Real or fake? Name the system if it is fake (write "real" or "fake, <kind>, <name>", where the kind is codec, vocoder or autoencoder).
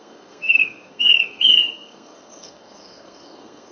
fake, codec, SNAC